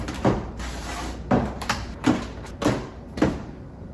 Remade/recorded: remade